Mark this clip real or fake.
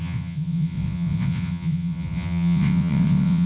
fake